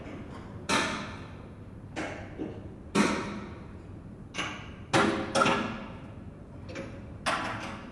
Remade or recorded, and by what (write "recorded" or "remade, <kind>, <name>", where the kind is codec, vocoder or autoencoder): recorded